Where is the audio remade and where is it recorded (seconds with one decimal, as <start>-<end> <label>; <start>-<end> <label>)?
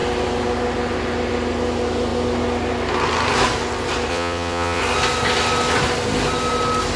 0.0-4.1 recorded; 4.1-4.8 remade; 4.8-7.0 recorded